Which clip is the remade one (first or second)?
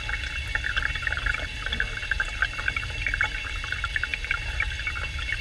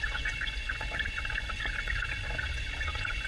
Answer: second